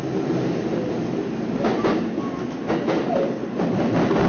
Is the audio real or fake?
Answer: real